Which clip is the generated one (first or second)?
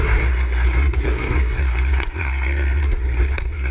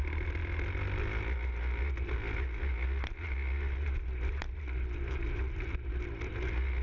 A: first